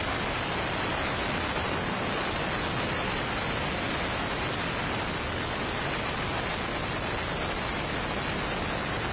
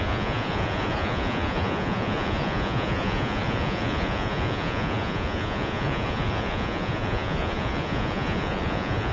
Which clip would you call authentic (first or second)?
first